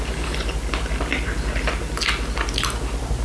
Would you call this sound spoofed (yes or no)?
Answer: no